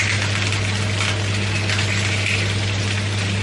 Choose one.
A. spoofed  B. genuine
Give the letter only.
B